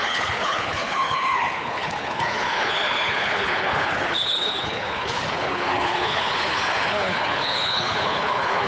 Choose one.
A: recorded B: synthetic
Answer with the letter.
B